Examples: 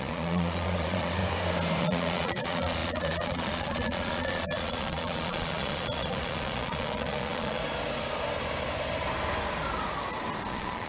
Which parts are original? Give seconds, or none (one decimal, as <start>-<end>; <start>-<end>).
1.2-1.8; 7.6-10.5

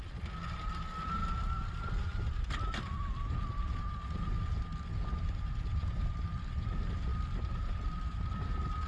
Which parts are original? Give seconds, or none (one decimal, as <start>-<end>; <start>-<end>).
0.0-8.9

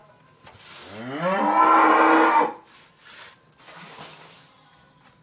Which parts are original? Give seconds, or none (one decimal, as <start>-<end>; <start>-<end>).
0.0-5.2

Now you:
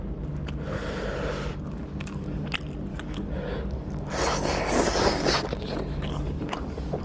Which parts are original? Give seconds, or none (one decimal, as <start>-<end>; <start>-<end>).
0.0-1.5; 2.4-2.9

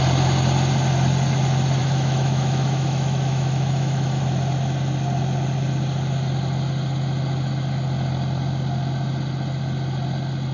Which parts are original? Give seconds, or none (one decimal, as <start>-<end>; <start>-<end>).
0.0-1.8; 4.2-10.5

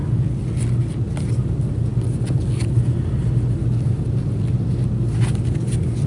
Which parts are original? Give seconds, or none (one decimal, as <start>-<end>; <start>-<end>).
0.0-6.1